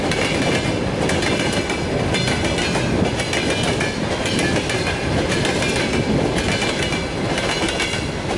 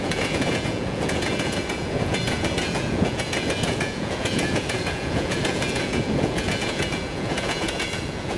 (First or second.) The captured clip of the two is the first